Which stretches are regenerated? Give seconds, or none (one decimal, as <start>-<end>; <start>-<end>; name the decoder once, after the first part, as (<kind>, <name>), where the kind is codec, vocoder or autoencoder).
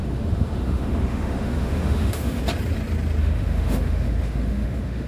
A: 0.0-2.4 (autoencoder, DAC-VAE); 3.2-5.1